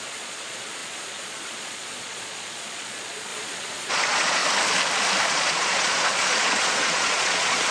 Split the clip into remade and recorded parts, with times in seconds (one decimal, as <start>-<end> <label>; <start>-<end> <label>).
0.0-4.4 remade; 4.4-5.3 recorded; 5.3-7.7 remade